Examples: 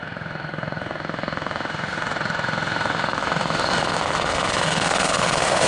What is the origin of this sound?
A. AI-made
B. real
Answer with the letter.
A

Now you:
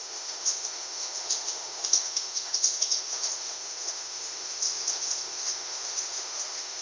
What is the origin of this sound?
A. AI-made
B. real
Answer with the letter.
A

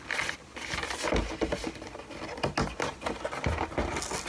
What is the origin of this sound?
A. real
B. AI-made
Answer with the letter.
A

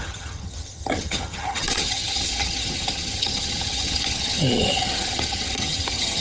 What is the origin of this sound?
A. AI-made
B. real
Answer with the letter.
A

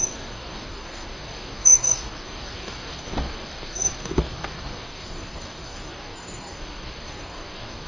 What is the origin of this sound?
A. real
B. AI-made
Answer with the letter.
B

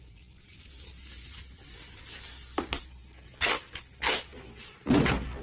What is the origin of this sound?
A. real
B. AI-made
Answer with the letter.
B